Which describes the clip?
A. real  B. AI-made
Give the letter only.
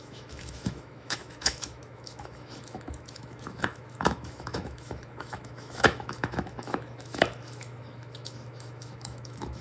B